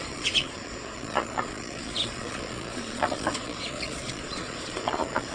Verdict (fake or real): fake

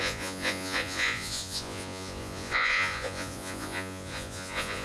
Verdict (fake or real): fake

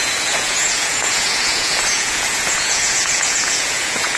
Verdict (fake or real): fake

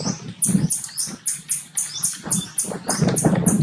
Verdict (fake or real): real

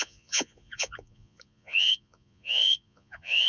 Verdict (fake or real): fake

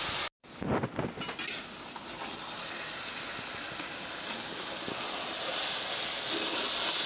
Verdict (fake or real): real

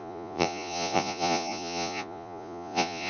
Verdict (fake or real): fake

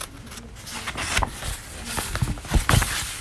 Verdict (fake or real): real